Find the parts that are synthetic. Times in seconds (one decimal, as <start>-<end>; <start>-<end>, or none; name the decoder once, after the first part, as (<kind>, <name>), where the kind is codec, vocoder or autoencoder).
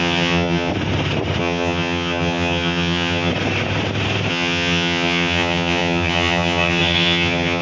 0.0-0.7 (vocoder, HiFi-GAN); 1.4-3.3; 4.3-7.6